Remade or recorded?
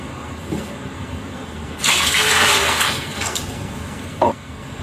remade